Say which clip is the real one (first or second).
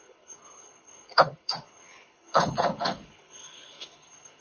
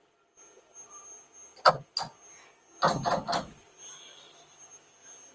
second